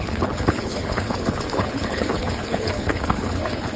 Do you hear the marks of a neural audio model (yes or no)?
yes